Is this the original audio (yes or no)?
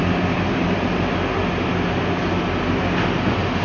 yes